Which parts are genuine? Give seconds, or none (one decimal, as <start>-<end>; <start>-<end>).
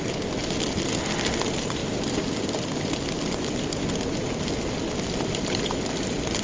0.0-6.4